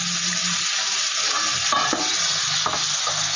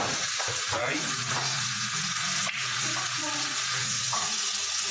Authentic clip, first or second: first